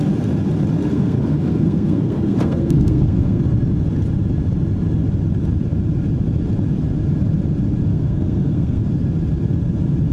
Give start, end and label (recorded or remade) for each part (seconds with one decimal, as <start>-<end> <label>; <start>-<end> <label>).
0.0-0.9 recorded; 0.9-3.4 remade; 3.4-7.9 recorded; 7.9-8.8 remade; 8.8-10.1 recorded